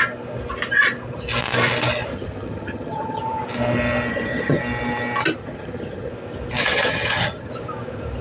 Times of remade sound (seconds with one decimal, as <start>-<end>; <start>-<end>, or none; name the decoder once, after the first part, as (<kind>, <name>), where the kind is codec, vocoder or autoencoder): 2.1-3.2 (vocoder, HiFi-GAN); 4.1-4.6; 5.4-6.1; 6.6-7.5